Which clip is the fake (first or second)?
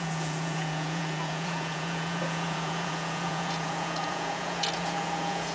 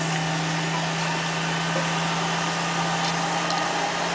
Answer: first